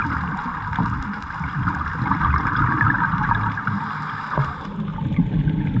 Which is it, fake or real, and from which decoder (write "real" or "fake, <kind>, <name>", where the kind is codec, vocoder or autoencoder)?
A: real